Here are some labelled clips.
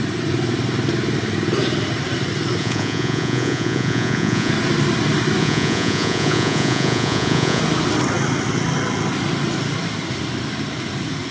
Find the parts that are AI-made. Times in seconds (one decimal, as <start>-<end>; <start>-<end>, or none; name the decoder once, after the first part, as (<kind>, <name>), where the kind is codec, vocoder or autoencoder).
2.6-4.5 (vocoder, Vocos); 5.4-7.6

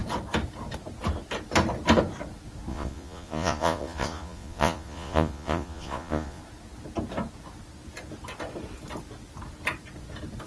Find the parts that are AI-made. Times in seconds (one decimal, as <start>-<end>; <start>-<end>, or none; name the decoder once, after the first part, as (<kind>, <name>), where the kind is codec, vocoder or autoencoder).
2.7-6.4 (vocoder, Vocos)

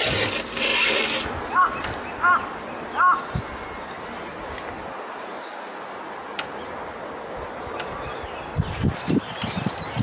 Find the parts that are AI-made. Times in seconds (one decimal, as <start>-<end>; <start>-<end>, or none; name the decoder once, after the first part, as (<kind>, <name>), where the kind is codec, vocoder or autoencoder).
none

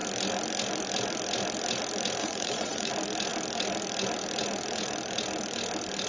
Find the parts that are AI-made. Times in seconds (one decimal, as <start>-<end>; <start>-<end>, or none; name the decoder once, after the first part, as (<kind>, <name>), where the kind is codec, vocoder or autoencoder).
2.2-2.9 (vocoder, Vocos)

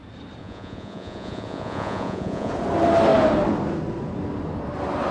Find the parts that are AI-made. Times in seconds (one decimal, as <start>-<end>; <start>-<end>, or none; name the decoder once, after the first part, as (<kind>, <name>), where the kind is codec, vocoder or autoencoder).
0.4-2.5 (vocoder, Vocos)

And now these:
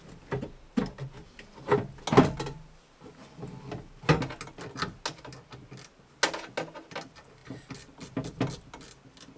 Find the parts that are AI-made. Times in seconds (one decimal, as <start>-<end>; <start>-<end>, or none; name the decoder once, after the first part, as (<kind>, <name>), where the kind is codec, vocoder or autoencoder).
none